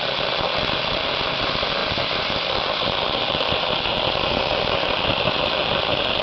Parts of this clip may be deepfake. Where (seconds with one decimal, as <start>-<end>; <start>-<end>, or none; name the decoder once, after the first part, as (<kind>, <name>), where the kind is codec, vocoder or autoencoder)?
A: none